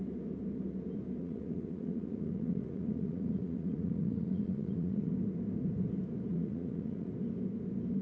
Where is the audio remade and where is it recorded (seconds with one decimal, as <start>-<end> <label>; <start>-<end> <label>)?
0.0-1.2 recorded; 1.2-5.1 remade; 5.1-6.3 recorded; 6.3-7.1 remade; 7.1-8.0 recorded